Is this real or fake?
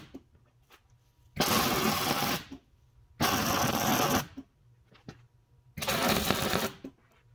real